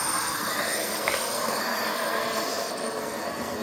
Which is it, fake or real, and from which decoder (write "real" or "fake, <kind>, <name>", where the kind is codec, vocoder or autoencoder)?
fake, codec, SNAC